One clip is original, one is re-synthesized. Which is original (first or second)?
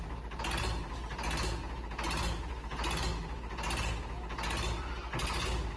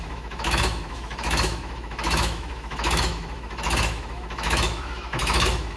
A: first